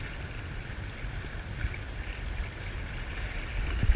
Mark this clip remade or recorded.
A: recorded